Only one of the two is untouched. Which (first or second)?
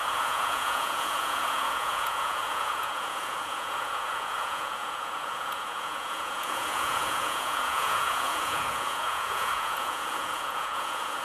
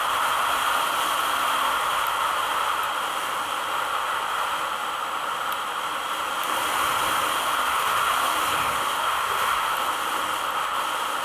second